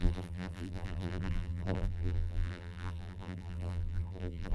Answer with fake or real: fake